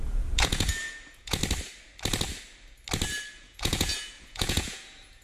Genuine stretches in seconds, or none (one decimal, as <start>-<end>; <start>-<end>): 1.4-3.3